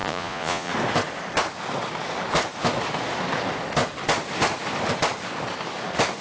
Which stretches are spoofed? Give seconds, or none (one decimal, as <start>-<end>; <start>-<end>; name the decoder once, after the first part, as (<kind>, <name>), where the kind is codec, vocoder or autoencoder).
0.0-0.7 (vocoder, Vocos)